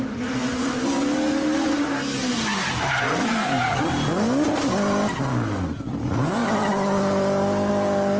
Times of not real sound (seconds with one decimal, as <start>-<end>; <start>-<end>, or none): 3.0-3.8